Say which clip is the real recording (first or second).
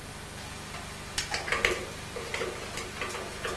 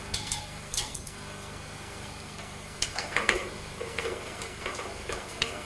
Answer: first